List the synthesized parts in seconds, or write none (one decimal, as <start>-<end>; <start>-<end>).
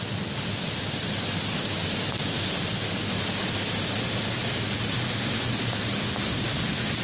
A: none